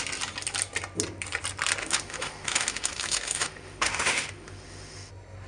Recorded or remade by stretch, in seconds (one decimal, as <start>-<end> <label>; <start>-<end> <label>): 0.0-1.8 recorded; 1.8-5.1 remade; 5.1-5.5 recorded